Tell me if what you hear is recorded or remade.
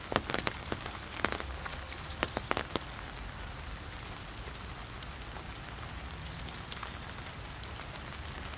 recorded